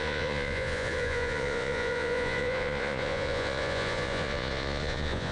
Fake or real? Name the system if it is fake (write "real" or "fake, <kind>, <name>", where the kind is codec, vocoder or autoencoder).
fake, vocoder, Vocos